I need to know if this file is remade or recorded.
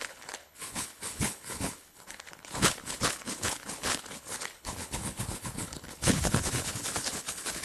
remade